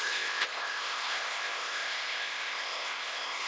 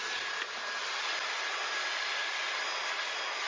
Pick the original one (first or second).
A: second